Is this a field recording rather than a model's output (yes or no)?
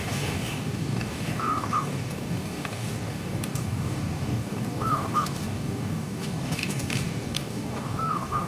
no